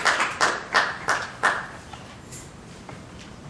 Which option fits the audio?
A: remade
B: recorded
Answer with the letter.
A